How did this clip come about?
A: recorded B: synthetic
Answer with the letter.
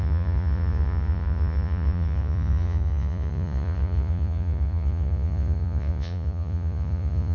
B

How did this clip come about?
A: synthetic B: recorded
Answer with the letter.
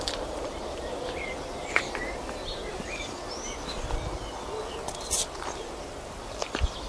B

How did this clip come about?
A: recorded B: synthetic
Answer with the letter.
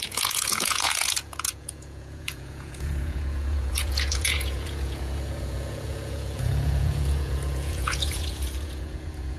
B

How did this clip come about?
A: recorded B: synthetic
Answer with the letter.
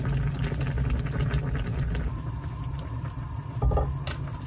A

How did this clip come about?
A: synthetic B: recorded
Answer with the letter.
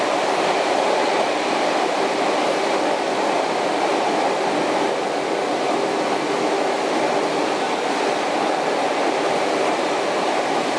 B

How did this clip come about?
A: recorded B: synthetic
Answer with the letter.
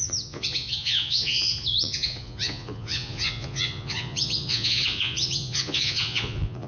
B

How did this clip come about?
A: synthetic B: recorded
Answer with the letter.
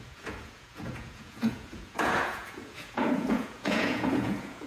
A